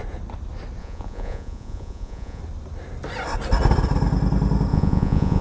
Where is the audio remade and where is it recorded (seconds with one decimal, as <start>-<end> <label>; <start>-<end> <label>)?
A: 0.0-0.8 recorded; 0.8-2.4 remade; 2.4-4.7 recorded; 4.7-5.4 remade